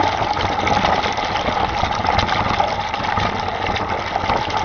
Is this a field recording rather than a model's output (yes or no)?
yes